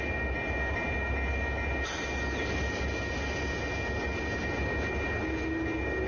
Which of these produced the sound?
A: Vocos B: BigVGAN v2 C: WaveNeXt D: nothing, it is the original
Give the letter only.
D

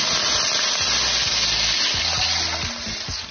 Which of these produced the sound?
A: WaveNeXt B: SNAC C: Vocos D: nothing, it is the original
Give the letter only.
D